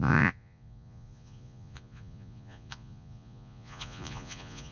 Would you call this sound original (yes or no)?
no